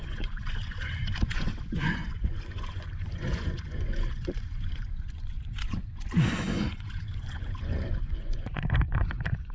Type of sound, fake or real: fake